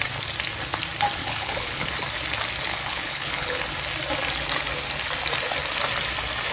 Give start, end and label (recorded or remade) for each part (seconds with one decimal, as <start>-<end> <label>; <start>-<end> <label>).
0.0-1.2 recorded; 1.2-1.9 remade; 1.9-2.7 recorded; 2.7-3.6 remade; 3.6-6.5 recorded